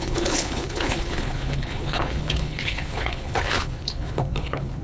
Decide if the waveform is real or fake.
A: fake